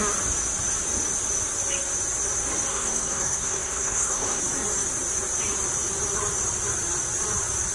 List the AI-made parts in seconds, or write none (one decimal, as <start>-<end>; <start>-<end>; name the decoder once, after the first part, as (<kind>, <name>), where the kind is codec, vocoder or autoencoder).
2.7-4.4 (codec, SNAC)